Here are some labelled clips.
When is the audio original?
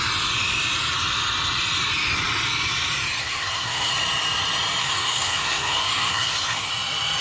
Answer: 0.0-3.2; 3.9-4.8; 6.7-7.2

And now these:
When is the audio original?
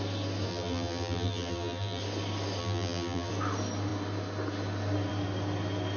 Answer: 0.0-0.5; 2.0-2.6; 3.3-6.0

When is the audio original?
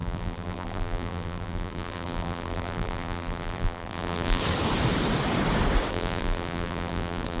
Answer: 4.4-5.9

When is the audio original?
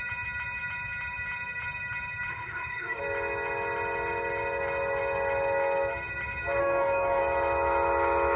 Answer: 0.0-2.3; 3.0-6.6; 7.2-8.4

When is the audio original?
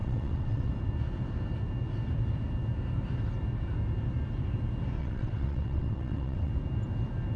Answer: 0.7-5.0; 6.5-7.4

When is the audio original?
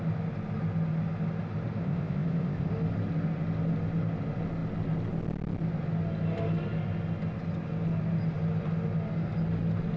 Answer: 0.0-1.8; 2.7-10.0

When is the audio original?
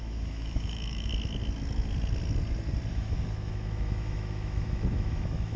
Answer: 1.1-2.9